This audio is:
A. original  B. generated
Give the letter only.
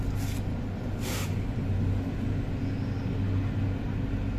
A